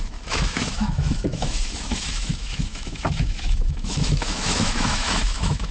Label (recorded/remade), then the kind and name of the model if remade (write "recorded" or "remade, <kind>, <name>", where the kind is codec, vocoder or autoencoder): remade, autoencoder, DAC-VAE